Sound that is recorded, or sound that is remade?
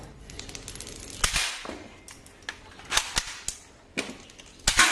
recorded